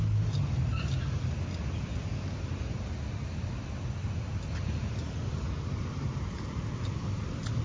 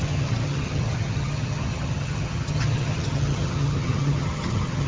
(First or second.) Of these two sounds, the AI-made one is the second